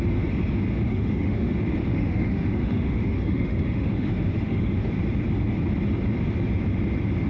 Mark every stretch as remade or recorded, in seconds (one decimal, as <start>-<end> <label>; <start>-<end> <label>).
0.0-0.9 recorded; 0.9-1.5 remade; 1.5-1.9 recorded; 1.9-4.9 remade; 4.9-7.3 recorded